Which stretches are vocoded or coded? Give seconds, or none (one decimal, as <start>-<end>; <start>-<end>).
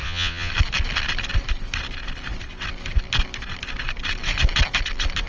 0.0-0.5